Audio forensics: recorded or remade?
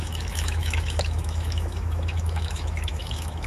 remade